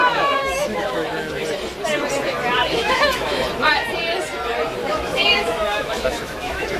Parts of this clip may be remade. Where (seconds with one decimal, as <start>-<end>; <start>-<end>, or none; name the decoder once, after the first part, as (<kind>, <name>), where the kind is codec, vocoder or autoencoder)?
0.0-1.4 (autoencoder, DAC-VAE); 2.6-3.4; 4.8-6.8